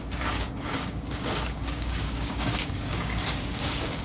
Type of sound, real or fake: fake